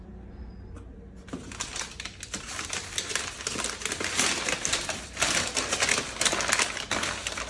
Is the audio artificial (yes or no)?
no